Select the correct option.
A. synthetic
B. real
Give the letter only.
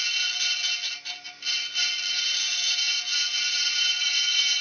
B